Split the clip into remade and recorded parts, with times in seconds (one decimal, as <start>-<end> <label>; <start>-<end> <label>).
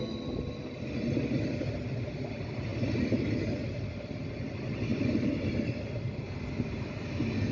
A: 0.0-2.7 recorded; 2.7-3.3 remade; 3.3-4.9 recorded; 4.9-5.5 remade; 5.5-7.5 recorded